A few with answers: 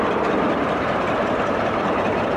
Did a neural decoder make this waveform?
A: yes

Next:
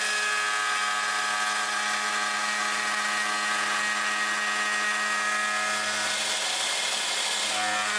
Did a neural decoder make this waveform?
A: no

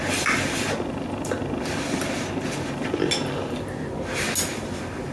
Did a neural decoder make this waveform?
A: no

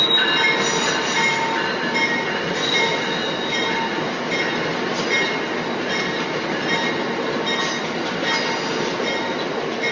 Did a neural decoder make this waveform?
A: no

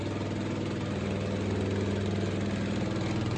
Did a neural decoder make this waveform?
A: no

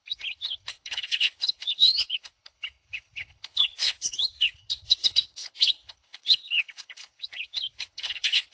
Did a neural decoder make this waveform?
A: yes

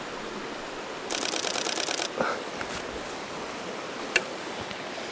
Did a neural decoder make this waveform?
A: no